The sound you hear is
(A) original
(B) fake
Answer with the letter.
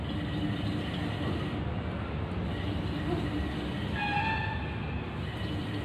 A